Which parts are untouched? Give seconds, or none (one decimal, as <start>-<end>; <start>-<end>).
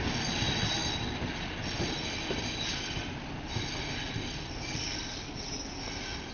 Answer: 0.0-6.3